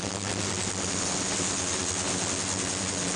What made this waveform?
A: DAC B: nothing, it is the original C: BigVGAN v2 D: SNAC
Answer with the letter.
B